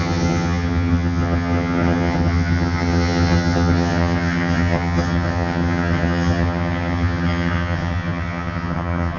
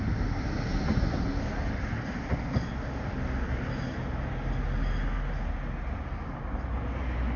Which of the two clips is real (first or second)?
second